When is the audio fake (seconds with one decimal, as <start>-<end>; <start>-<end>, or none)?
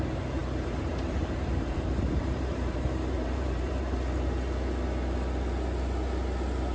0.4-3.8